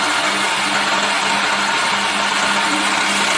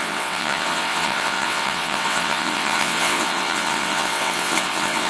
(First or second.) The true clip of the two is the first